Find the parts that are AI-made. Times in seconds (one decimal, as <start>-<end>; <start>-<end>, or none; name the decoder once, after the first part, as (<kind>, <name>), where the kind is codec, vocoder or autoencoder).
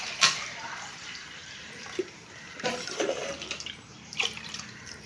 0.0-5.1 (vocoder, BigVGAN v2)